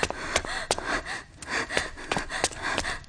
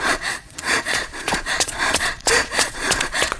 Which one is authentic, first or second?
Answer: first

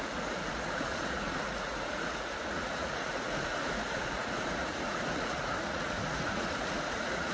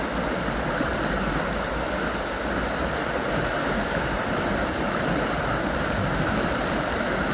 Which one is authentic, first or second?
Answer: second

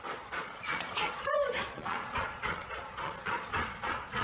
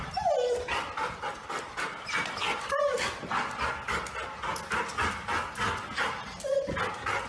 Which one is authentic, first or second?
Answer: second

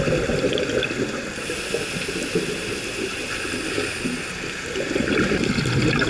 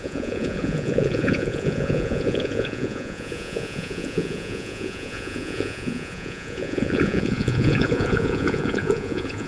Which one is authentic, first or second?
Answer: first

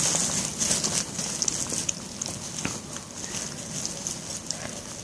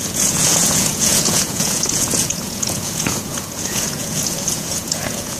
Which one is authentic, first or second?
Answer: first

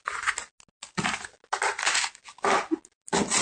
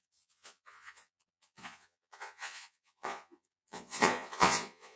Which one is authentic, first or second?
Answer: first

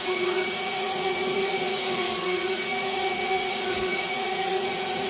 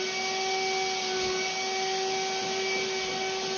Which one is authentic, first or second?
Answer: second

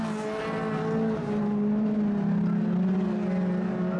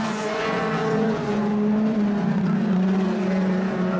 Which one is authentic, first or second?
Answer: first